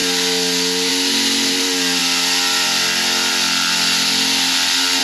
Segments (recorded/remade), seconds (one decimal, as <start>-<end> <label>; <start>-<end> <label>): 0.0-5.0 recorded